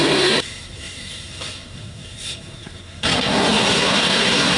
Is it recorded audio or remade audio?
remade